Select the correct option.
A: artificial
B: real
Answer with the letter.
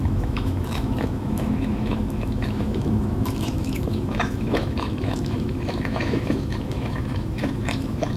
A